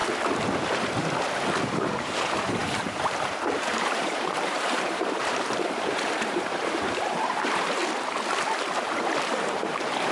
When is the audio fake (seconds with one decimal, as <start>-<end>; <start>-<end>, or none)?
1.6-7.8; 8.8-10.1